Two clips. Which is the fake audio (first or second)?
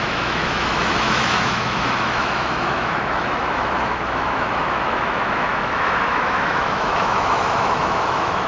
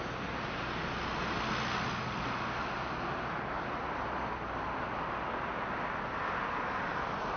first